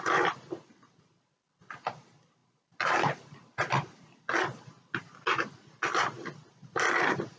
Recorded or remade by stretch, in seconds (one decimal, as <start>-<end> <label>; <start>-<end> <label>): 0.0-7.4 recorded